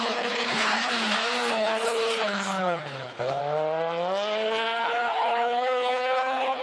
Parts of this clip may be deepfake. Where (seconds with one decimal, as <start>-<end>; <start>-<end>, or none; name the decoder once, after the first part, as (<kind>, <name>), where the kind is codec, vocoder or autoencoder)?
0.0-0.9 (codec, HILCodec); 1.5-3.4; 4.8-6.6